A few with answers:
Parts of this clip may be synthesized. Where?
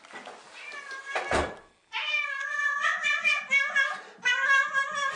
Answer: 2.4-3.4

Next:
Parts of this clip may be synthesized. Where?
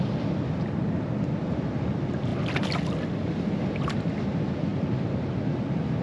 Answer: 4.7-5.2